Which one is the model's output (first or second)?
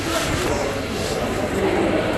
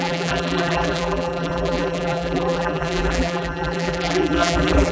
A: second